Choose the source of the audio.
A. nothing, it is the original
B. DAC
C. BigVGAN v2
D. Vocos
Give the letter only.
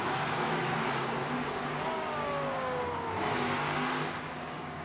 B